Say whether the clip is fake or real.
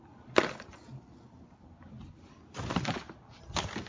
real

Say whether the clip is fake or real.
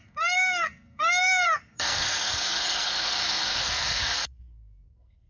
fake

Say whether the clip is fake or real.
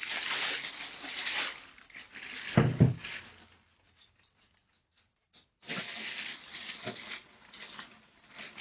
real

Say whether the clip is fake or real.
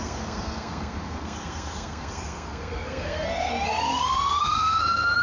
fake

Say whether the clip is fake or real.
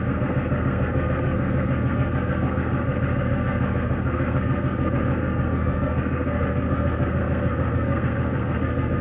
fake